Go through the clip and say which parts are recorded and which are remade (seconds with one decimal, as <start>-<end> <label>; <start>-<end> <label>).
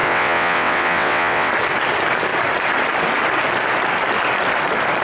0.0-1.5 remade; 1.5-5.0 recorded